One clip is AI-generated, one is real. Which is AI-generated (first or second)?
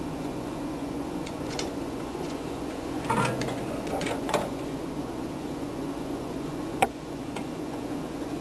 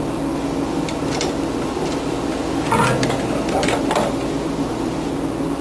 first